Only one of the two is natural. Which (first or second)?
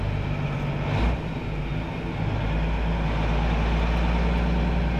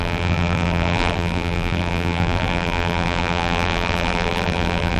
first